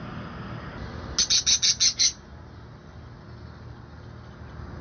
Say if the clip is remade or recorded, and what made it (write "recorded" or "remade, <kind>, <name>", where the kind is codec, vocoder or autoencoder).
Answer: recorded